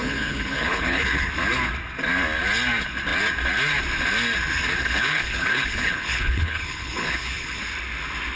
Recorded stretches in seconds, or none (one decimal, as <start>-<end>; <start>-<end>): 1.3-4.8; 7.6-8.4